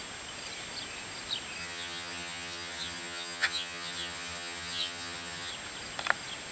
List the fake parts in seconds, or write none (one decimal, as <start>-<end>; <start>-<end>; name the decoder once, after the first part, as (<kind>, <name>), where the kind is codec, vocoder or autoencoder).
1.6-5.5 (vocoder, HiFi-GAN)